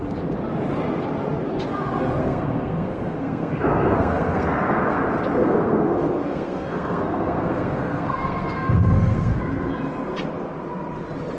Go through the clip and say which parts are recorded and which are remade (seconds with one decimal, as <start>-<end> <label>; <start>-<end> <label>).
0.0-2.2 recorded; 2.2-5.0 remade; 5.0-5.4 recorded; 5.4-9.4 remade; 9.4-11.4 recorded